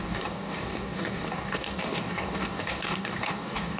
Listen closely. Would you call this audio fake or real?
fake